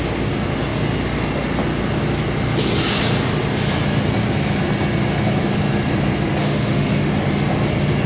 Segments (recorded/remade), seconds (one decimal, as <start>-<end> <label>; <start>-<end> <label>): 0.0-6.4 recorded; 6.4-7.1 remade; 7.1-8.1 recorded